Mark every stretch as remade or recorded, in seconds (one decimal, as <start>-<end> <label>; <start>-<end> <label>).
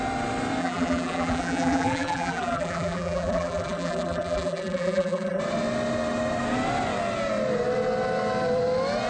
0.0-0.6 recorded; 0.6-5.4 remade; 5.4-9.1 recorded